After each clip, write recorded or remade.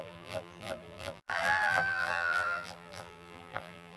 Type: remade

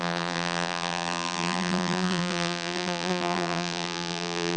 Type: remade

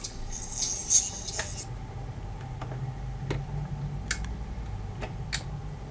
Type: recorded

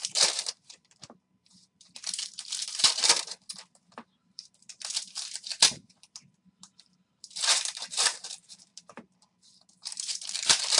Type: remade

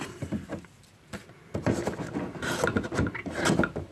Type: recorded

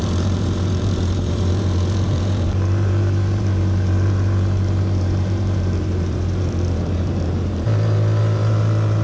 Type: remade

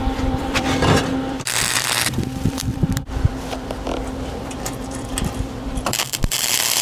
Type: remade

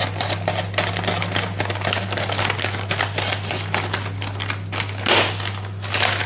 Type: recorded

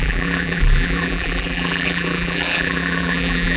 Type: remade